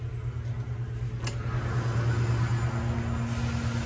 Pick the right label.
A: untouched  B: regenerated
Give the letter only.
A